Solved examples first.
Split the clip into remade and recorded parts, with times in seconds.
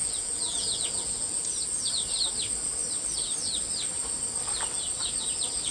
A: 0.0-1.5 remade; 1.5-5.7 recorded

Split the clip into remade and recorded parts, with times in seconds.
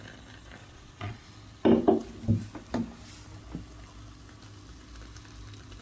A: 0.0-0.6 recorded; 0.6-1.3 remade; 1.3-5.8 recorded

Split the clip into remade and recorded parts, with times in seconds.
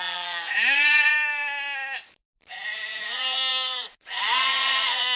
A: 0.0-1.1 remade; 1.1-2.5 recorded; 2.5-5.2 remade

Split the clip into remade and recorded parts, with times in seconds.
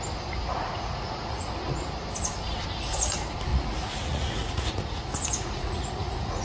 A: 0.0-0.5 recorded; 0.5-1.5 remade; 1.5-3.5 recorded; 3.5-6.4 remade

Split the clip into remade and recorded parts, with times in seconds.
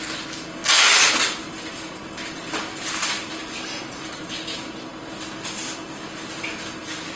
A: 0.0-7.2 recorded